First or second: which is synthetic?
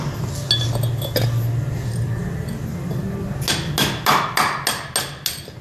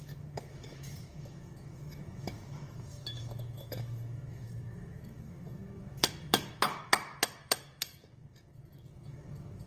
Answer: second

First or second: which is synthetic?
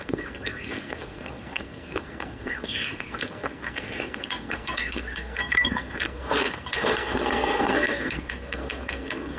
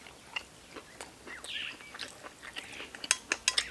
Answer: first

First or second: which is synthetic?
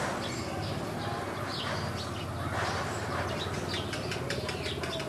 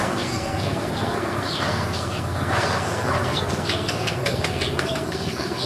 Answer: second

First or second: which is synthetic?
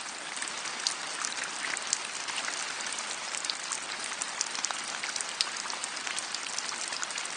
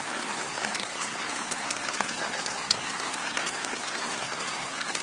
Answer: second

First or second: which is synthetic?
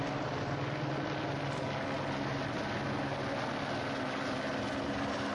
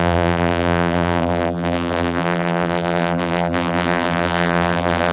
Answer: second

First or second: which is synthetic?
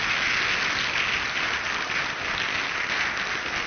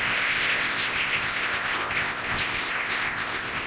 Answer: second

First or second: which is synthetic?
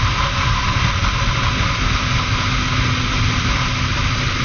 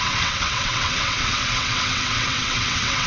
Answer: second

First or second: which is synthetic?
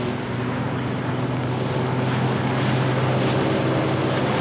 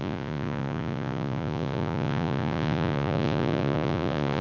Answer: second